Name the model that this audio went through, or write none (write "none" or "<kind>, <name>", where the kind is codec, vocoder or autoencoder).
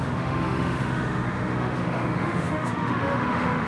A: autoencoder, DAC-VAE